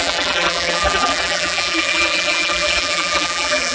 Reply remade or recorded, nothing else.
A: remade